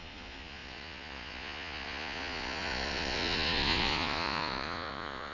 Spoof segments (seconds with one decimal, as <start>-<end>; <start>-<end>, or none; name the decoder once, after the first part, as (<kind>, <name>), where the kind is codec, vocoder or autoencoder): 0.0-5.3 (vocoder, Vocos)